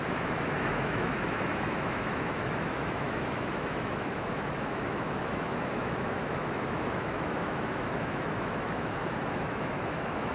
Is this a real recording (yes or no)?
no